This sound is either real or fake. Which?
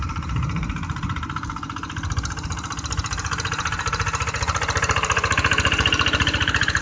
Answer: fake